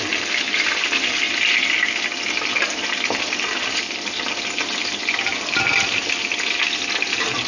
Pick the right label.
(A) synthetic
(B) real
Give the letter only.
B